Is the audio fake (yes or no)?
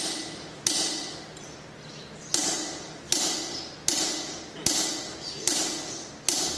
no